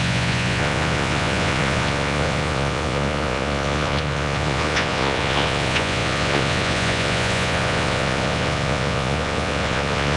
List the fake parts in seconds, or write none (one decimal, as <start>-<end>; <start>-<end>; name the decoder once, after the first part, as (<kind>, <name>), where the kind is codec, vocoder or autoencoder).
0.0-10.2 (vocoder, Vocos)